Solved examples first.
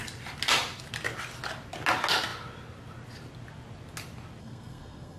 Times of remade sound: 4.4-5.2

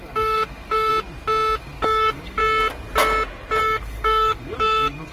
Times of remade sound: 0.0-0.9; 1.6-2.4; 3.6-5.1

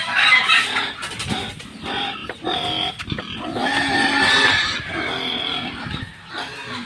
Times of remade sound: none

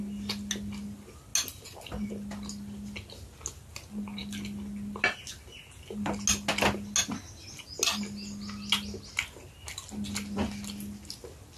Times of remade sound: none

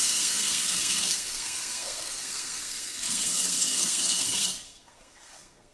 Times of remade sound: 0.0-5.7